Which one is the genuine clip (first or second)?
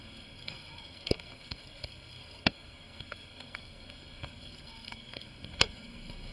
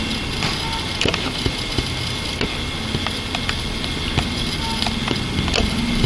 second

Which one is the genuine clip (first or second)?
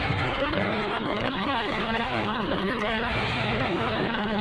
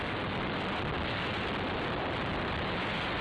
second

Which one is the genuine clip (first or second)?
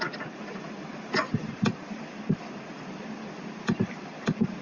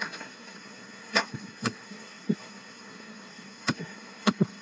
first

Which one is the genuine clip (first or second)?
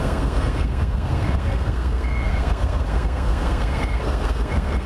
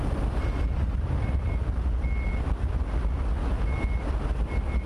second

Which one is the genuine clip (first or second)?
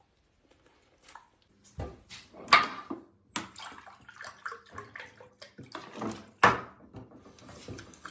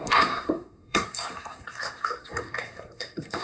first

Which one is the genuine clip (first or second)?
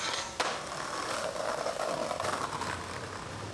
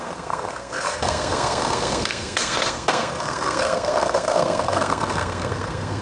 first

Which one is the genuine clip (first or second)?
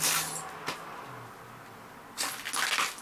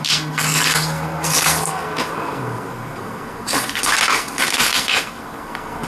first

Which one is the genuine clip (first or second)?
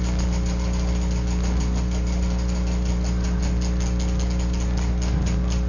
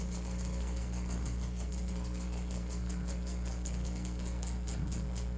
first